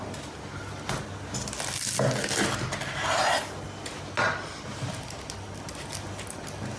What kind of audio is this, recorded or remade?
recorded